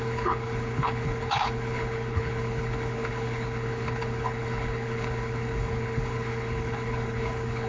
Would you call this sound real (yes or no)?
no